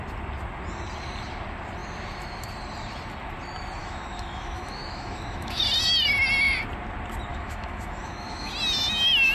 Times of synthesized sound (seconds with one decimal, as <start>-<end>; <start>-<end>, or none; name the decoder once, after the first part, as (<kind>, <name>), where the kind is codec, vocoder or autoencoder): 3.8-5.6 (autoencoder, DAC-VAE); 7.3-8.5